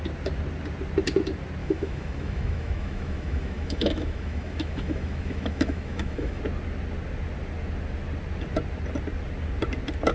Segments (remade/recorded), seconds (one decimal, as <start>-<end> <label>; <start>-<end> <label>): 0.0-1.6 recorded; 1.6-6.4 remade; 6.4-10.1 recorded